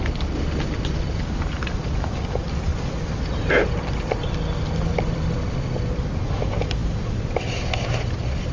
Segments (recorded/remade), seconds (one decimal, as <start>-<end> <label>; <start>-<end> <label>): 0.0-2.7 recorded; 2.7-3.2 remade; 3.2-4.9 recorded; 4.9-6.2 remade; 6.2-8.5 recorded